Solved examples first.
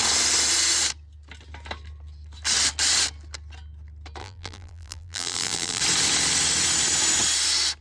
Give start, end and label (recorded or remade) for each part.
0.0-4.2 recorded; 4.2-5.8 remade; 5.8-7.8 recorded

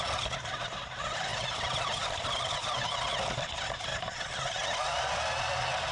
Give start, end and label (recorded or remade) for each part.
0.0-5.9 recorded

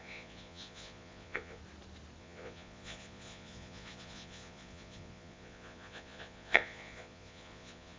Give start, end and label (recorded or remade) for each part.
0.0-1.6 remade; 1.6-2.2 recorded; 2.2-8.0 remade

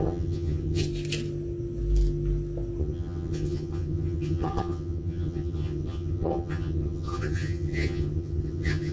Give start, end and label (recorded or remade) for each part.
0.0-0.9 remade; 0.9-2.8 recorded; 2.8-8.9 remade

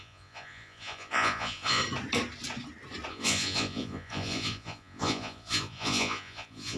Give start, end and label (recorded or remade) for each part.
0.0-1.8 remade; 1.8-3.1 recorded; 3.1-6.8 remade

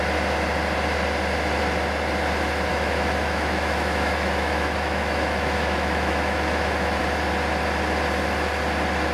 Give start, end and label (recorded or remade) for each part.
0.0-2.7 recorded; 2.7-7.0 remade; 7.0-9.1 recorded